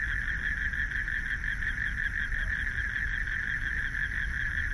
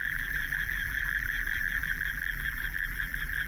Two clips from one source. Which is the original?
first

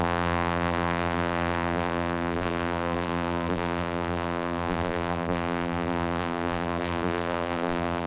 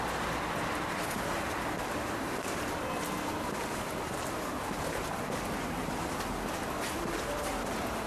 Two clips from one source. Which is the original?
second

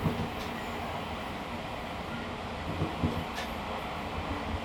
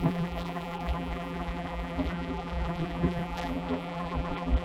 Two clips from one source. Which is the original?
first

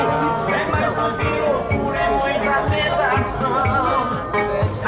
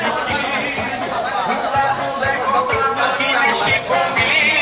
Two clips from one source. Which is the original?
first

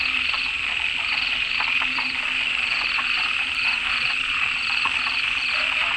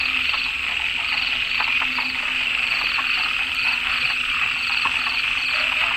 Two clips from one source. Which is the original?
second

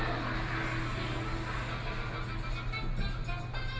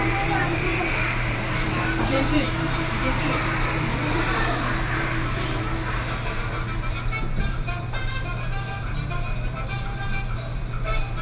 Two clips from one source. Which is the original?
first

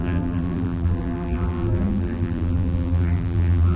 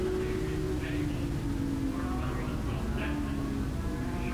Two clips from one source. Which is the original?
second